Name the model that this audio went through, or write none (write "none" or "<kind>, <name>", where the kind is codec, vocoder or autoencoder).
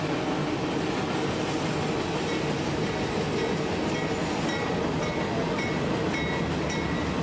none